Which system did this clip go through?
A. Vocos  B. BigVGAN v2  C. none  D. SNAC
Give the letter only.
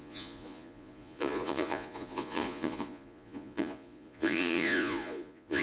A